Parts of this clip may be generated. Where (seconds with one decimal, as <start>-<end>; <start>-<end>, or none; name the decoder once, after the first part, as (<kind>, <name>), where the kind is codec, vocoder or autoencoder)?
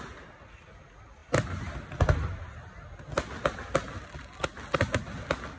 none